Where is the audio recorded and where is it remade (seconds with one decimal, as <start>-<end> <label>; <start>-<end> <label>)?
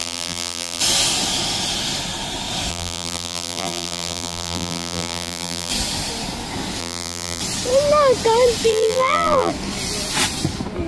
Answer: 0.0-0.8 remade; 0.8-2.7 recorded; 2.7-5.7 remade; 5.7-6.8 recorded; 6.8-7.4 remade; 7.4-8.7 recorded; 8.7-9.5 remade; 9.5-10.9 recorded